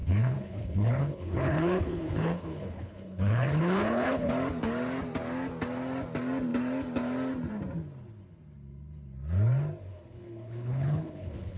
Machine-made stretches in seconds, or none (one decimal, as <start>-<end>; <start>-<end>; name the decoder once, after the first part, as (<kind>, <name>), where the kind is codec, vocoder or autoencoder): 0.0-4.3 (codec, HILCodec); 9.9-11.6